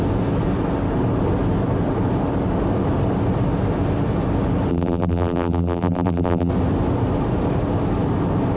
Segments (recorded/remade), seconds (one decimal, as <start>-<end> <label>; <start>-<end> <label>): 0.0-4.7 recorded; 4.7-6.5 remade; 6.5-8.6 recorded